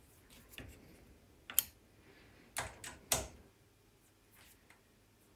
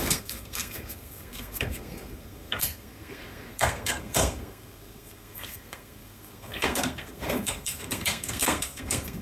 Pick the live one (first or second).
first